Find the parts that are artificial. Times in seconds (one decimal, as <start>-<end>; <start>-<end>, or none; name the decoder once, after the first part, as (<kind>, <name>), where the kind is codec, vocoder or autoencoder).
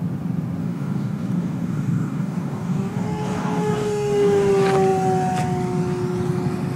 0.6-4.5 (codec, DAC)